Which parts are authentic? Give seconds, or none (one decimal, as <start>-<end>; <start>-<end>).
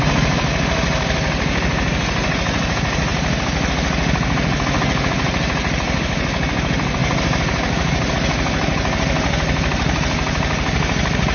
0.0-11.3